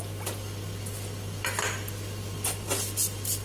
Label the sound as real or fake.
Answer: real